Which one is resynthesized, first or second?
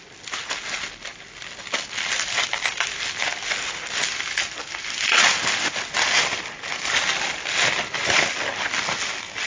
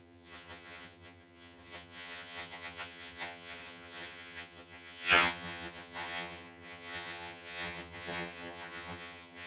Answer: second